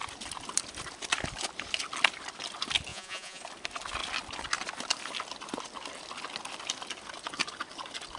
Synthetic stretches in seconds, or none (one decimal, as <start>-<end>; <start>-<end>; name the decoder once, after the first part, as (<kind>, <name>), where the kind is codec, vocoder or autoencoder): 2.9-3.4 (vocoder, Vocos)